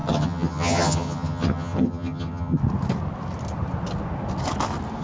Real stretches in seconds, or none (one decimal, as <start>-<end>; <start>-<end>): 2.6-5.0